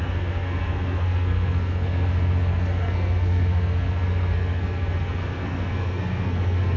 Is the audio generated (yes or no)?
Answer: yes